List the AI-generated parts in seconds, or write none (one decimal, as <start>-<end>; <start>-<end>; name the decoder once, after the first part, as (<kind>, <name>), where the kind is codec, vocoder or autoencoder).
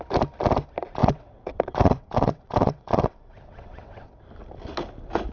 1.0-4.2 (vocoder, WaveNeXt)